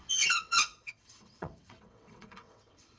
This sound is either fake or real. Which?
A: fake